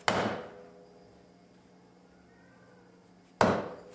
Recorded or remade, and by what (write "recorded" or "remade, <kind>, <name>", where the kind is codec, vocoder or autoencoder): recorded